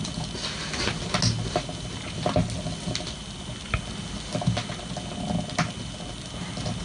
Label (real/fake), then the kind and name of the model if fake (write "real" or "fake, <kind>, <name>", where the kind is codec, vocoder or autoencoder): real